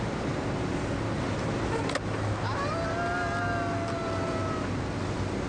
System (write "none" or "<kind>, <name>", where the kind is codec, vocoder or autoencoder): none